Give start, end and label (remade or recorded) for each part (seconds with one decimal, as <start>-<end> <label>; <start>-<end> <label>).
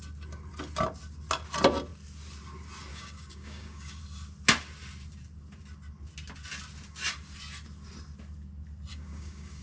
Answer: 0.0-2.9 recorded; 2.9-4.0 remade; 4.0-8.9 recorded; 8.9-9.6 remade